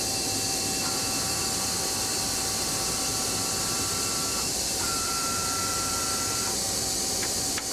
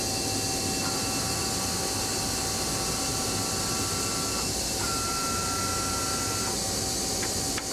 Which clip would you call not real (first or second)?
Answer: first